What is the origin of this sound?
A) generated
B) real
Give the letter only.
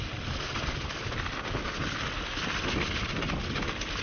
B